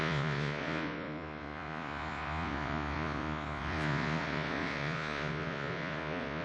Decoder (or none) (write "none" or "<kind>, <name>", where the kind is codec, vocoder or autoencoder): vocoder, Vocos